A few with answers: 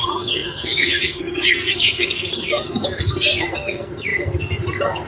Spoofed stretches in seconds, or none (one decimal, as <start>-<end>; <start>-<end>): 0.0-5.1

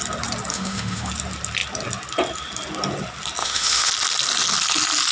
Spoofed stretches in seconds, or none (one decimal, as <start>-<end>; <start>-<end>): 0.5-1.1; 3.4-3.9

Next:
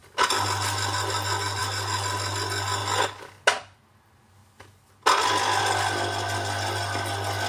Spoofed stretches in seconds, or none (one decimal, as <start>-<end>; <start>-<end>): 2.8-3.3